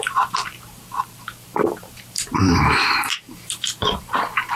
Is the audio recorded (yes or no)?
no